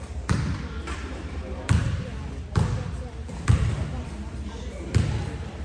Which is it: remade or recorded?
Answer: remade